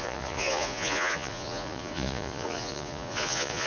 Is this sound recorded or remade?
remade